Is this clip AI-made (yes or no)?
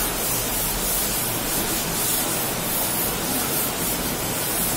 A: no